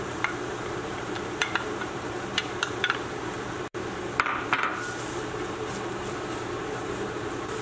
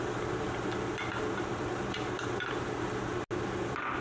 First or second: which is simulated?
first